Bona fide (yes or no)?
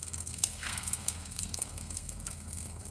no